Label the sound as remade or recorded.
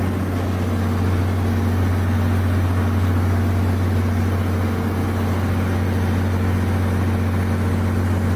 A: recorded